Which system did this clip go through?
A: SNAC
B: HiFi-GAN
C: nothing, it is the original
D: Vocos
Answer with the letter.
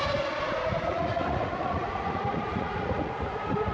D